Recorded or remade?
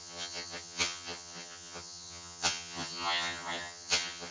remade